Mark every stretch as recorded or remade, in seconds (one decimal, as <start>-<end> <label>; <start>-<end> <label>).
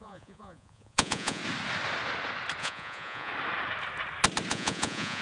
0.0-1.4 remade; 1.4-2.6 recorded; 2.6-3.3 remade; 3.3-4.5 recorded; 4.5-5.2 remade